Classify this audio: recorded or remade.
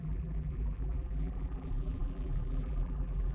remade